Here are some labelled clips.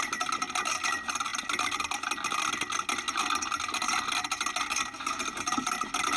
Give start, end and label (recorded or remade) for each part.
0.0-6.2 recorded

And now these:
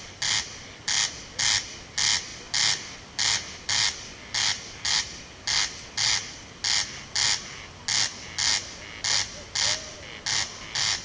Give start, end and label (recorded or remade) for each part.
0.0-11.0 recorded

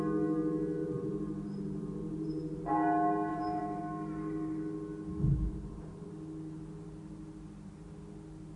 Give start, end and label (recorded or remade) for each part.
0.0-0.8 recorded; 0.8-2.7 remade; 2.7-3.3 recorded; 3.3-3.8 remade; 3.8-5.3 recorded; 5.3-6.1 remade; 6.1-8.6 recorded

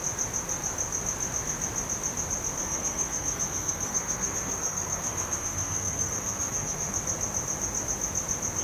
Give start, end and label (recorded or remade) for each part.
0.0-2.6 recorded; 2.6-6.9 remade; 6.9-8.6 recorded

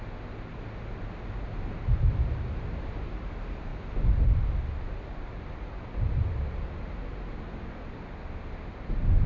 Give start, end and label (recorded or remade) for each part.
0.0-9.3 recorded